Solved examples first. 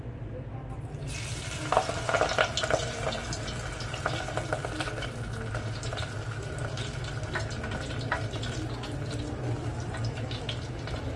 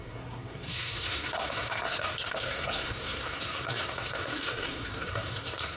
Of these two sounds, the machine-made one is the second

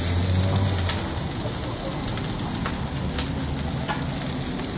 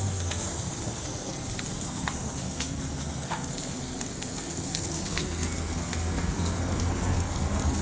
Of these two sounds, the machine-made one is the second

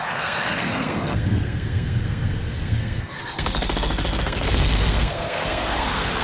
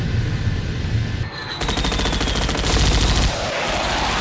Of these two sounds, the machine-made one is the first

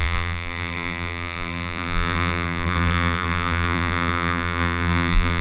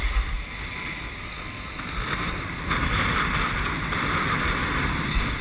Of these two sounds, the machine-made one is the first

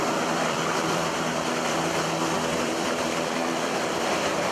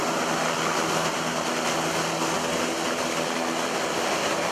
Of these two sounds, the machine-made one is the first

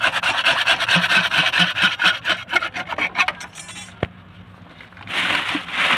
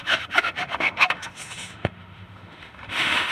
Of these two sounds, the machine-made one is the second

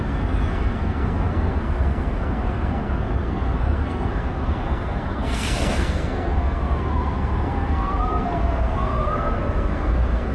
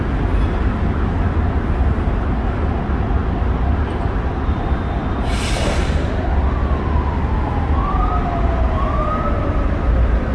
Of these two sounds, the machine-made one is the first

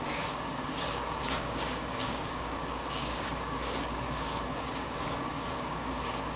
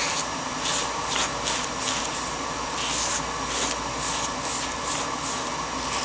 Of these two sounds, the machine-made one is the first